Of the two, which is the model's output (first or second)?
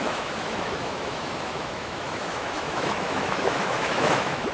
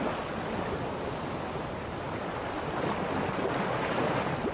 first